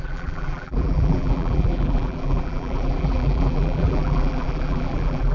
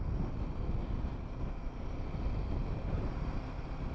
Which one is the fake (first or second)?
first